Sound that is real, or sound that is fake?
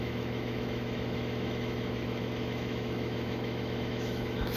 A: fake